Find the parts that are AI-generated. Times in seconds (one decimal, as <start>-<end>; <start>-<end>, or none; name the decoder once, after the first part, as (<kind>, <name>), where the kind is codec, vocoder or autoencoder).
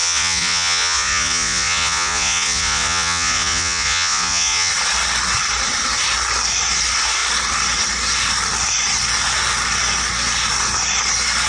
0.0-4.7 (vocoder, Vocos)